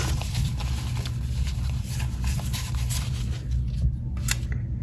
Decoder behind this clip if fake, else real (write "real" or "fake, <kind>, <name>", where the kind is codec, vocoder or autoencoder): real